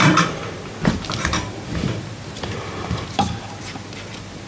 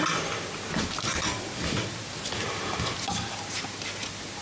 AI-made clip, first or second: first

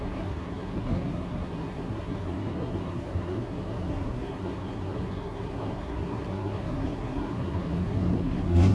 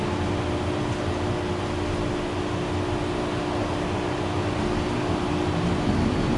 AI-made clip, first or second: first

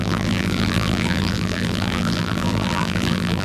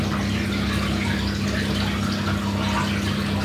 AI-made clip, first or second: first